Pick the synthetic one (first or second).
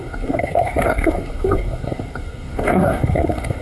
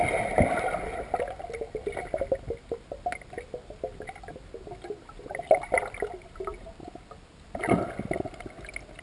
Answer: first